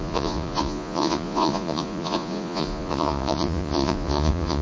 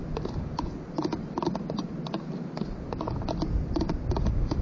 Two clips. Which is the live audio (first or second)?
second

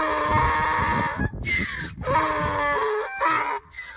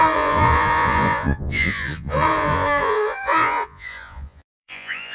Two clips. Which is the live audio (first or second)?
first